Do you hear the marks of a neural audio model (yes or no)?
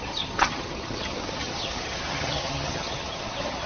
yes